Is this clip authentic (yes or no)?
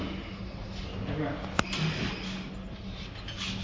yes